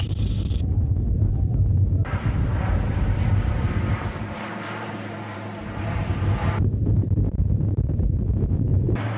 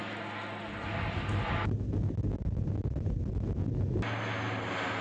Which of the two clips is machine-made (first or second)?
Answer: first